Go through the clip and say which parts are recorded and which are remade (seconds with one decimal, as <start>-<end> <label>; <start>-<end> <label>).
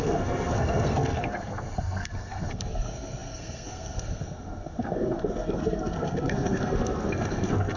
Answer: 0.0-7.8 remade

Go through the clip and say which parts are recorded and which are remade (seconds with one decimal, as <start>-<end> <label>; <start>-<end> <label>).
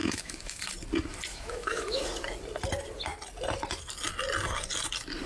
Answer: 0.0-0.6 remade; 0.6-1.3 recorded; 1.3-2.0 remade; 2.0-5.3 recorded